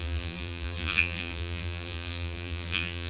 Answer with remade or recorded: remade